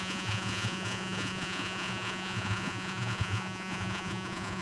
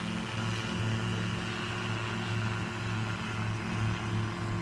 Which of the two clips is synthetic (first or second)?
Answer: first